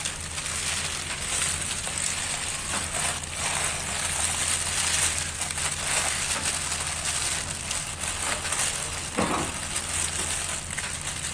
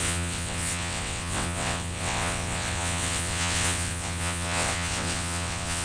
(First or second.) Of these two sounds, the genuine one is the first